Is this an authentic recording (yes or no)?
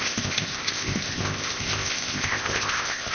no